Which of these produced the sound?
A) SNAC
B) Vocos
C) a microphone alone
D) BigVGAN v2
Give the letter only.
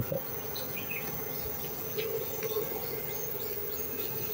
B